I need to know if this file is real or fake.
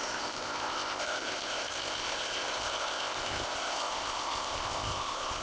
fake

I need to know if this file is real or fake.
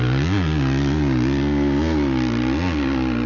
real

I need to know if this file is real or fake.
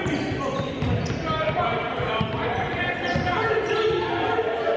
real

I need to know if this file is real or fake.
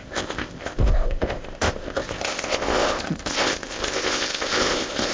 fake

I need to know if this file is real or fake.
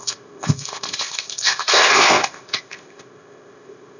fake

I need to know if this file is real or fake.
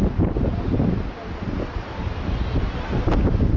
real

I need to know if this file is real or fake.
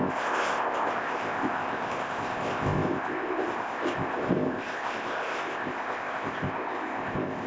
fake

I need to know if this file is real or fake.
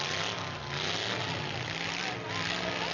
real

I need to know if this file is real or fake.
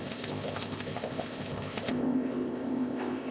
fake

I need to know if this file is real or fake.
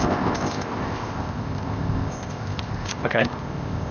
fake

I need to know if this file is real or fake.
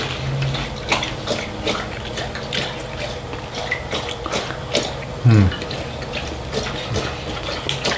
real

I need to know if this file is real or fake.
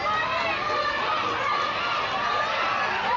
real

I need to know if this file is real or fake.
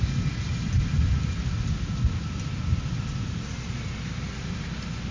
real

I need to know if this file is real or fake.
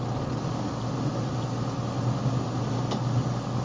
real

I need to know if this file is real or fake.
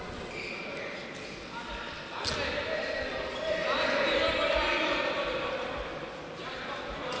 real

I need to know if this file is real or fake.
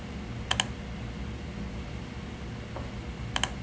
real